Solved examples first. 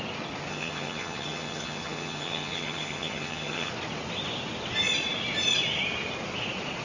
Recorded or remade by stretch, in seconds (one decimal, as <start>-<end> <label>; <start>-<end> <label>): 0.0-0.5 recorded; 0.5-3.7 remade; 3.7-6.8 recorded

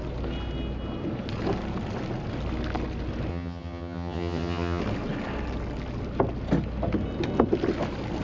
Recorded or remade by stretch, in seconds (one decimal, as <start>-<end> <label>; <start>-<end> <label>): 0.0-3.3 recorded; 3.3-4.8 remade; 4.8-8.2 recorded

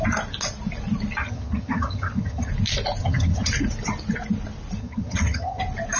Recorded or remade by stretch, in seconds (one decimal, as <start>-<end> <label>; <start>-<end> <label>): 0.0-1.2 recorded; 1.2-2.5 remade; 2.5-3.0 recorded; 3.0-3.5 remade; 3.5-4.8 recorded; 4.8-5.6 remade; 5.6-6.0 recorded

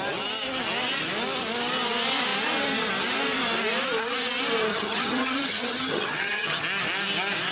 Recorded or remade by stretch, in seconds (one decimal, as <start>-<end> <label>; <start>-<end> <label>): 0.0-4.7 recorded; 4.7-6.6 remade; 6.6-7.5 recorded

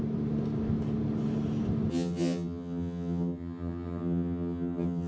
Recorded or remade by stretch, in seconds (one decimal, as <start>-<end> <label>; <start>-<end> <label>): 0.0-1.9 recorded; 1.9-5.1 remade

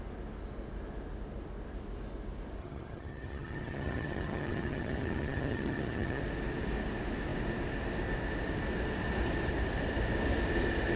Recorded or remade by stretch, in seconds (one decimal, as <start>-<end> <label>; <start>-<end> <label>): 0.0-2.6 recorded; 2.6-6.2 remade; 6.2-11.0 recorded